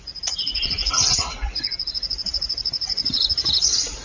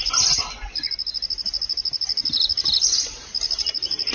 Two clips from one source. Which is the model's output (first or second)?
first